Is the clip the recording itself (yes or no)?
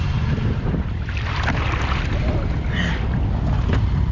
yes